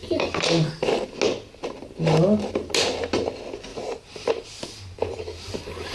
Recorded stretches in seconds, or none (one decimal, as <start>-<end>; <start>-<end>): 0.7-1.8; 2.7-3.7; 4.3-5.9